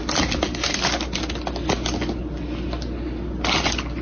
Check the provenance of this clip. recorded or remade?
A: recorded